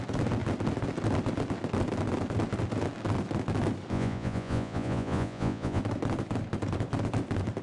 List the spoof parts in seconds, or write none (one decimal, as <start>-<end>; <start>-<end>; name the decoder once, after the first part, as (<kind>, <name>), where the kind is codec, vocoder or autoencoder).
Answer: 3.9-5.8 (vocoder, Vocos)